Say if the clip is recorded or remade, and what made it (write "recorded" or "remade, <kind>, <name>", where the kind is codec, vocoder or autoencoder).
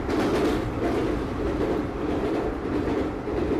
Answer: recorded